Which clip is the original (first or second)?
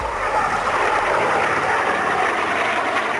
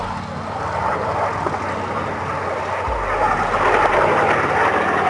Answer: second